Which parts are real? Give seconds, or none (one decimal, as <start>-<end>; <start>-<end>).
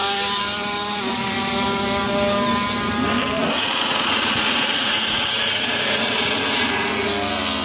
0.0-3.4; 7.1-7.6